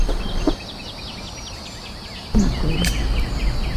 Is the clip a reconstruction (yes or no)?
no